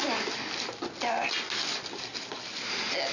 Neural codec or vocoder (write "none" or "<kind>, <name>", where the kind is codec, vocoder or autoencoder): none